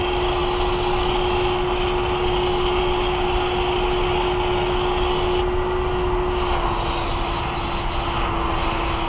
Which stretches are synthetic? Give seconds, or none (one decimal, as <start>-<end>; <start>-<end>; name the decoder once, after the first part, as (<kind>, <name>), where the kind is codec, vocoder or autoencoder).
none

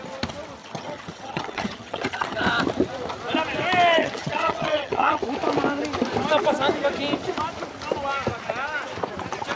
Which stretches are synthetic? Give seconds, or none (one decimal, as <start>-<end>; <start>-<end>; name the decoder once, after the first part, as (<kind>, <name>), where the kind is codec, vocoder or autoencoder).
0.6-2.4 (vocoder, HiFi-GAN); 4.0-5.2